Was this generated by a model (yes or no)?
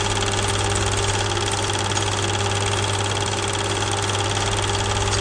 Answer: no